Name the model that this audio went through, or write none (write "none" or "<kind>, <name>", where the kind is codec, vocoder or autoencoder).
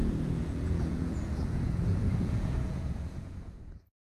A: vocoder, Vocos